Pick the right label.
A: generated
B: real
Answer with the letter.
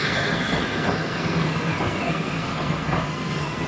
A